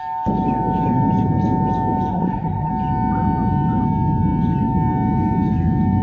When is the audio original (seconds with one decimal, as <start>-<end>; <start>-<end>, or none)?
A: 0.0-2.1; 2.7-6.0